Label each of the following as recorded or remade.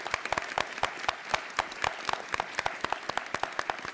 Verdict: recorded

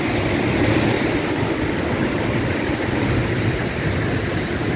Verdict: recorded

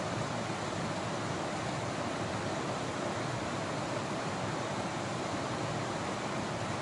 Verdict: recorded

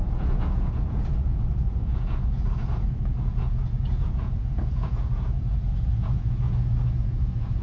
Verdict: remade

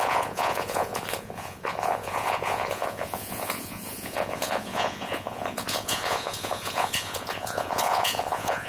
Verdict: remade